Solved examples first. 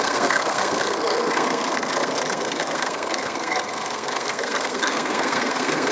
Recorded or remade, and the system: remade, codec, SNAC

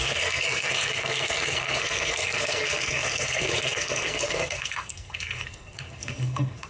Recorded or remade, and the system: remade, codec, SNAC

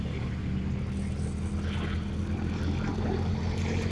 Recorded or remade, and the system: recorded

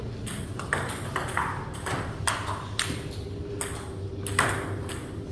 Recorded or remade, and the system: recorded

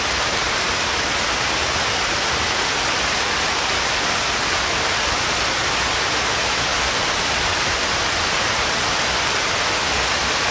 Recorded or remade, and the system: recorded